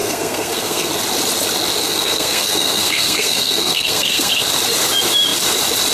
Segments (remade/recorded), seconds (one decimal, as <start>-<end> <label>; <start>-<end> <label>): 0.0-0.9 remade; 0.9-1.8 recorded; 1.8-4.3 remade; 4.3-5.9 recorded